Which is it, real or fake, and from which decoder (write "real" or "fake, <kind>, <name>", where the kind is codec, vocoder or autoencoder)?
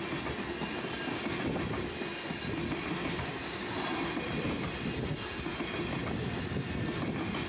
real